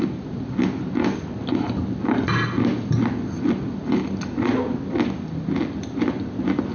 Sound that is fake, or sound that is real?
real